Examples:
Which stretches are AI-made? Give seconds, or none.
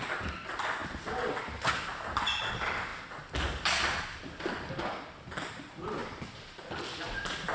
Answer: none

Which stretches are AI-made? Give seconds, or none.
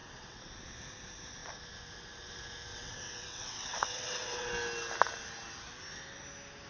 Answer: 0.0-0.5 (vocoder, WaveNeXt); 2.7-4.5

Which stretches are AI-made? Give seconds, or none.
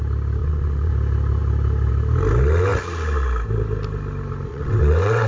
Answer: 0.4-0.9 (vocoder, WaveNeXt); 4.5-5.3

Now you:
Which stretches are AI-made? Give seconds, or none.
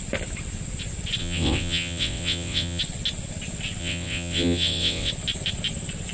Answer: 1.2-2.8 (vocoder, WaveNeXt); 3.8-5.1